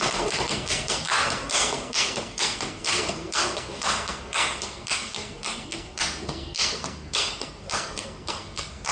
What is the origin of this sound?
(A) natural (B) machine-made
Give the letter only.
B